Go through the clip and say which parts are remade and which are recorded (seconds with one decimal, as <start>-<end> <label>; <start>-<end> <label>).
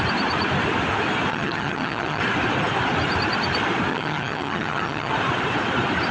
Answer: 0.0-1.3 recorded; 1.3-2.2 remade; 2.2-3.9 recorded; 3.9-5.1 remade; 5.1-6.1 recorded